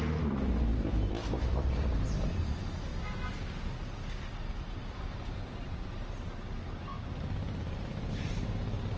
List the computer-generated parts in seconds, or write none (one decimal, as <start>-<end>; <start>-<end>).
0.0-2.9; 4.8-6.9; 8.1-9.0